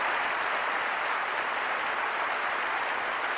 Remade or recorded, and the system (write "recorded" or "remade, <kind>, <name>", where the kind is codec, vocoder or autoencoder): recorded